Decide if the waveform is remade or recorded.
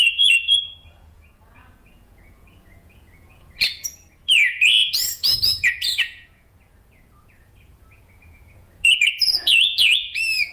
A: remade